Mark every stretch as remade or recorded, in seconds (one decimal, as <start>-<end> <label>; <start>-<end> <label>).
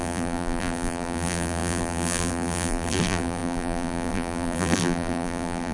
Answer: 0.0-5.7 remade